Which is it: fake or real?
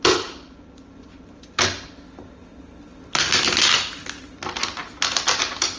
real